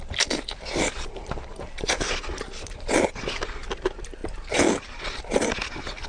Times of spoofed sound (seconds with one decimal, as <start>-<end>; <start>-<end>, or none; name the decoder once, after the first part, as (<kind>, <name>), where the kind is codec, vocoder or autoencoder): none